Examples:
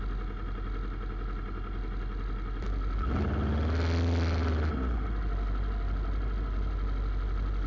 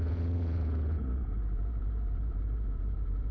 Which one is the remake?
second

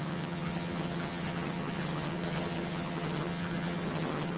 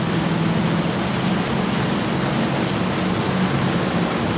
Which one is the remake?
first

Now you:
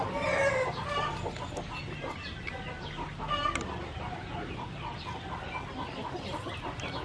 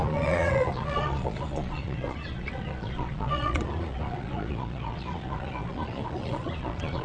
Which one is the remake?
second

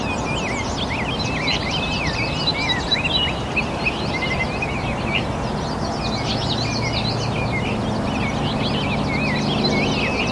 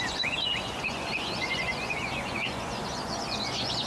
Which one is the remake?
second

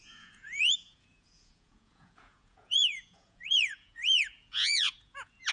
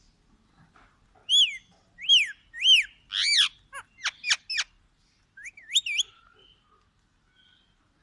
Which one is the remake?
first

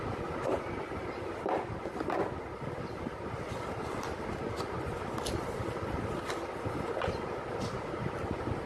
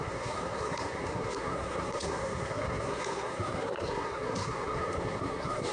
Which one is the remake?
second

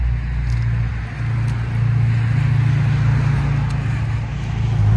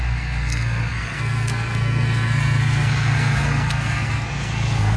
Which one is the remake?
second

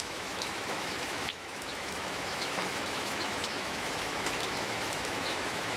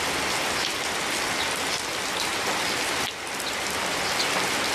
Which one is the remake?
first